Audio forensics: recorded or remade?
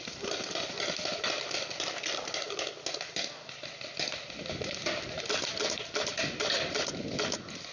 recorded